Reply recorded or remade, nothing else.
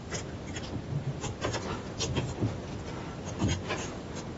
recorded